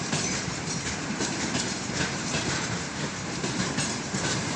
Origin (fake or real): fake